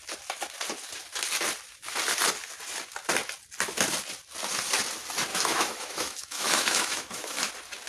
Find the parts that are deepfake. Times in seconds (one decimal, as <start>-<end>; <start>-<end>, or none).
5.3-7.5